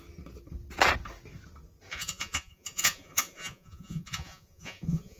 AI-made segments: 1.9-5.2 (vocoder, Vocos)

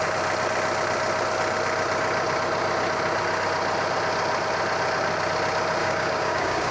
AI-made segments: 5.8-6.7 (codec, DAC)

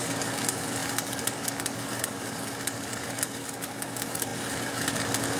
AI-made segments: 0.0-5.4 (codec, DAC)

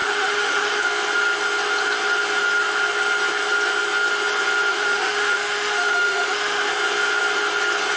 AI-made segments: 0.0-0.8 (autoencoder, DAC-VAE); 4.7-6.7

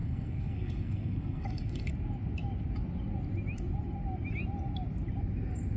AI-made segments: 0.0-1.9 (codec, SNAC)

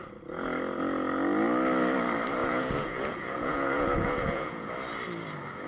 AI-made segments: 2.4-4.7 (vocoder, Vocos)